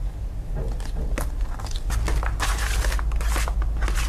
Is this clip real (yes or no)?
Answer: yes